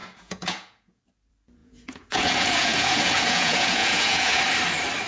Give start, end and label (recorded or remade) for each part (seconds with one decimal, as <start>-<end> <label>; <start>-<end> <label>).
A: 0.0-1.0 remade; 1.0-1.6 recorded; 1.6-4.4 remade; 4.4-5.1 recorded